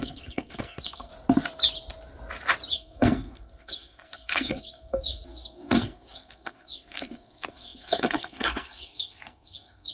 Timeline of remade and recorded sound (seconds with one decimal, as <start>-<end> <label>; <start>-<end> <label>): 0.0-1.1 remade; 1.1-2.7 recorded; 2.7-9.9 remade